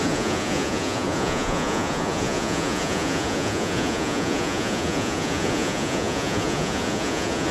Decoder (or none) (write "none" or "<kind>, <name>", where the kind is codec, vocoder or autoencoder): vocoder, Vocos